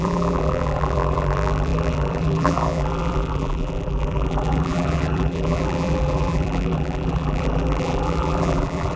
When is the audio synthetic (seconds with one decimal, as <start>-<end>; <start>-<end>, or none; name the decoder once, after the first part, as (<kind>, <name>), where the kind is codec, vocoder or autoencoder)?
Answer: 0.0-9.0 (vocoder, BigVGAN v2)